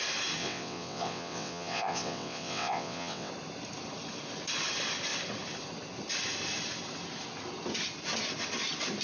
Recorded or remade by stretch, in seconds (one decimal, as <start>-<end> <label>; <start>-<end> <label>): 0.0-0.4 recorded; 0.4-3.3 remade; 3.3-9.0 recorded